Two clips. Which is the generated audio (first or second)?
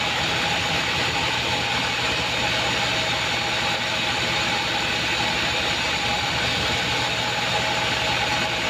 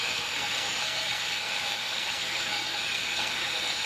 second